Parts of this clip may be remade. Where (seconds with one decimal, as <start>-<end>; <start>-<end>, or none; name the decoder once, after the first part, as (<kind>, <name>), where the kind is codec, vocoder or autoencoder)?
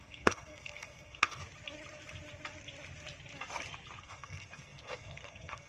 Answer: 0.0-1.4 (codec, SNAC); 4.0-5.7